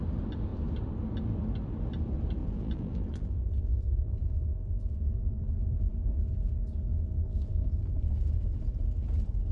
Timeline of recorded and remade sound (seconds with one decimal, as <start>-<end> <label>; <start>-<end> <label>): 0.0-2.4 recorded; 2.4-5.9 remade; 5.9-6.9 recorded; 6.9-7.9 remade; 7.9-9.5 recorded